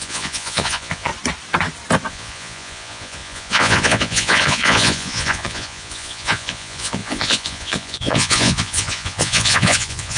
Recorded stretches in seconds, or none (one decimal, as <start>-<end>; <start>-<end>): 1.1-2.1